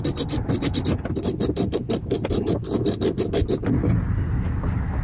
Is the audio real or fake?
real